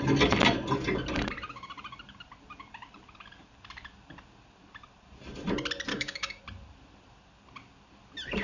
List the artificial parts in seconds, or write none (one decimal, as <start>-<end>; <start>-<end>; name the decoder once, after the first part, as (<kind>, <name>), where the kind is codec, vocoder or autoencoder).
5.9-6.4 (codec, DAC)